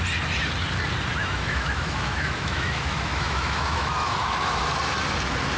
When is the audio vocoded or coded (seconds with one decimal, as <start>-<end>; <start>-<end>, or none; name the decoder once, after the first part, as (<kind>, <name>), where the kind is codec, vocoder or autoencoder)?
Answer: 1.2-4.6 (autoencoder, DAC-VAE)